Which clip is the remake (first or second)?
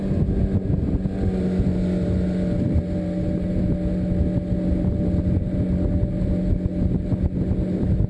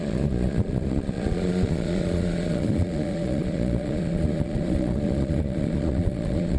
second